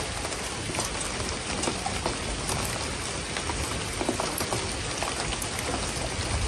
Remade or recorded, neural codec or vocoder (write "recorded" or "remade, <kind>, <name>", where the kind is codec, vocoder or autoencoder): recorded